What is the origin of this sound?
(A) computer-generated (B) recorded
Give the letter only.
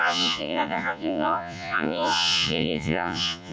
A